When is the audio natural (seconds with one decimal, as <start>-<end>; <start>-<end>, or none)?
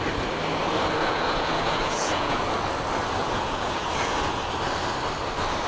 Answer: 0.0-1.0; 2.4-3.2; 4.4-5.7